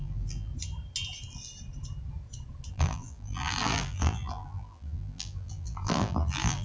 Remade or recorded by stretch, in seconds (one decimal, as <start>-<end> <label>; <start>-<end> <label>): 0.0-0.5 remade; 0.5-2.7 recorded; 2.7-6.6 remade